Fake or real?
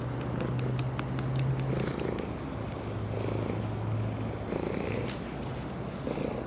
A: real